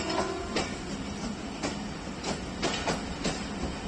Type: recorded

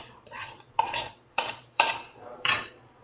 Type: remade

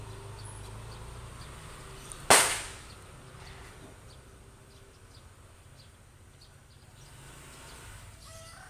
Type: recorded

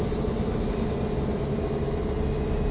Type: recorded